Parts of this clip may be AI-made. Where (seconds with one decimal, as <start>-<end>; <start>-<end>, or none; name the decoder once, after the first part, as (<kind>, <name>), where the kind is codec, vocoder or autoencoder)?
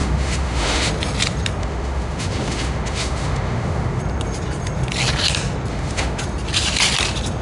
0.0-0.9 (autoencoder, DAC-VAE); 1.6-4.0; 5.7-6.2